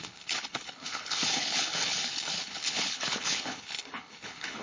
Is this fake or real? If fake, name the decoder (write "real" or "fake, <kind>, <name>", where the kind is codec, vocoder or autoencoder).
fake, codec, HILCodec